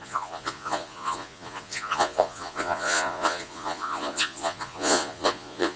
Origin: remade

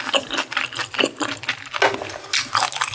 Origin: recorded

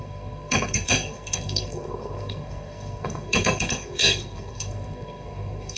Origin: remade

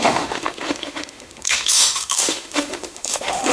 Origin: remade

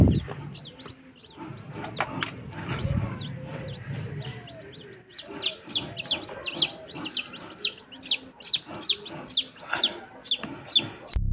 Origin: recorded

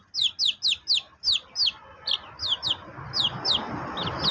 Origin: recorded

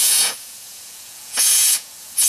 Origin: remade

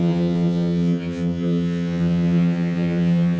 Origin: remade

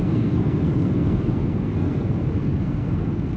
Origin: remade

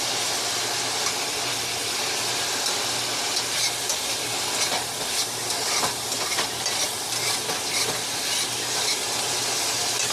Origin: recorded